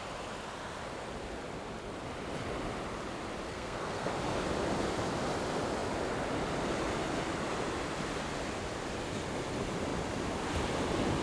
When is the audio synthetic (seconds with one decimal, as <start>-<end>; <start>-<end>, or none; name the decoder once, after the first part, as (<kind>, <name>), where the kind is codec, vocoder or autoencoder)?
3.5-4.1 (codec, SNAC)